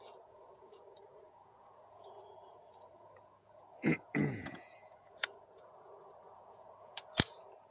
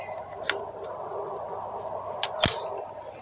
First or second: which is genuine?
second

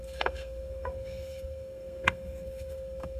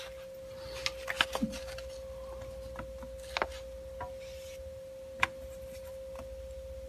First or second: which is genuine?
second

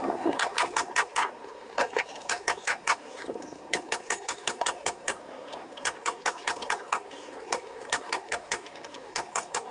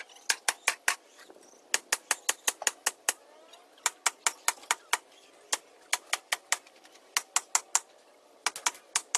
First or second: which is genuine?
second